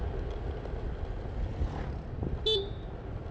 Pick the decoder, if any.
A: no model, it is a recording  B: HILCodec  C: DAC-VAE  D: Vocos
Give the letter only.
A